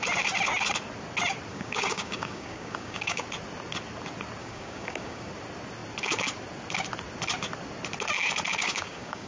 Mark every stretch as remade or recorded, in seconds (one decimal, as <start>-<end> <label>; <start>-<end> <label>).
0.0-1.5 recorded; 1.5-3.2 remade; 3.2-4.4 recorded; 4.4-5.3 remade; 5.3-8.6 recorded; 8.6-9.3 remade